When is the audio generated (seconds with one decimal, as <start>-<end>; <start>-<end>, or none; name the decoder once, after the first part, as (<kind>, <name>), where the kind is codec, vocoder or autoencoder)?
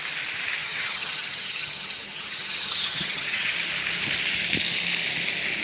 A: 0.6-3.5 (vocoder, HiFi-GAN)